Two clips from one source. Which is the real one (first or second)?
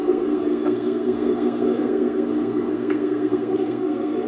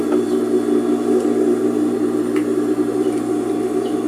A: second